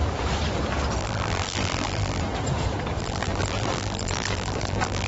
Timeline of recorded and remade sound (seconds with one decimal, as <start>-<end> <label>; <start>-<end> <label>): 0.0-1.0 recorded; 1.0-2.2 remade; 2.2-3.0 recorded; 3.0-5.1 remade